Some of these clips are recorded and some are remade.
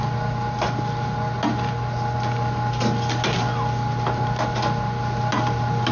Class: recorded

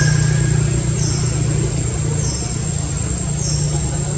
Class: recorded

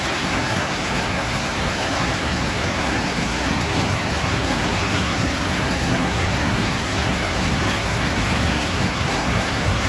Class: remade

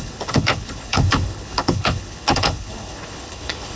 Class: remade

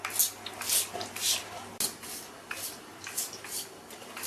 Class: recorded